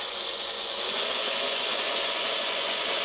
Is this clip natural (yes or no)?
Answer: no